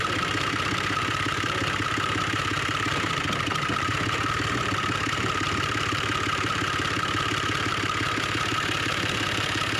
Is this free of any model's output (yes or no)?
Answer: no